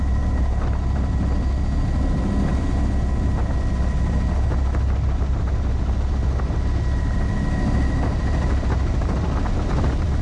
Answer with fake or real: real